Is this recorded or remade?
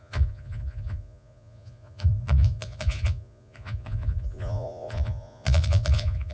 remade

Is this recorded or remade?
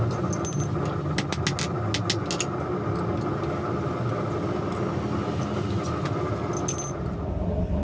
recorded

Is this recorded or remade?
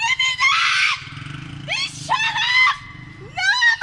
recorded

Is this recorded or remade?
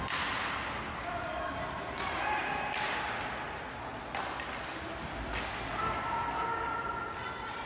recorded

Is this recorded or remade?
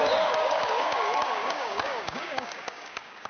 remade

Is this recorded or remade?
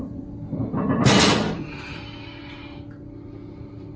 recorded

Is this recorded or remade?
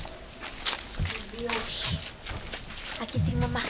recorded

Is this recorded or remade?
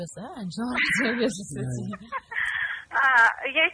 recorded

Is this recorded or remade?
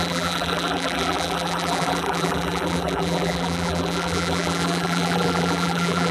remade